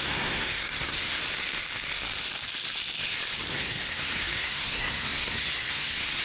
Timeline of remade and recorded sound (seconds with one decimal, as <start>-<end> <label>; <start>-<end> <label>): 0.0-1.2 remade; 1.2-3.5 recorded; 3.5-6.2 remade